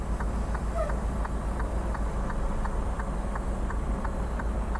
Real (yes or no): yes